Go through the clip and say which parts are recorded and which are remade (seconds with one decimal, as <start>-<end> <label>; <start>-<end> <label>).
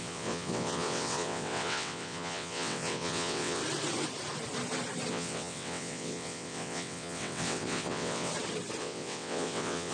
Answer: 0.0-3.6 remade; 3.6-5.1 recorded; 5.1-8.3 remade; 8.3-8.8 recorded; 8.8-9.9 remade